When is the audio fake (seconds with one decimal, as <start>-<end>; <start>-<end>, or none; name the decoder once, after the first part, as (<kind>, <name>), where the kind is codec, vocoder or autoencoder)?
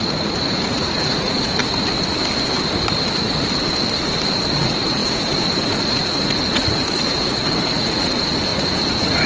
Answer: 0.0-1.6 (vocoder, Vocos); 4.6-9.3